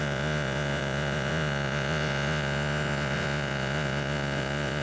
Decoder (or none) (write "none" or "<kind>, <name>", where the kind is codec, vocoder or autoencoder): vocoder, Vocos